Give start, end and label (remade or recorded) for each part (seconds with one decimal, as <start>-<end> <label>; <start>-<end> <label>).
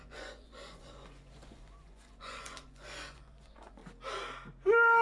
0.0-3.8 remade; 3.8-5.0 recorded